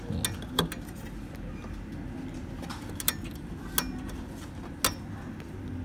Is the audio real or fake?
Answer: real